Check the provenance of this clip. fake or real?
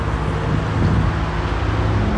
real